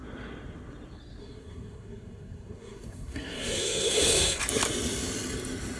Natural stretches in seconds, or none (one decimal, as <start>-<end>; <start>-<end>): 0.0-1.2; 4.4-5.8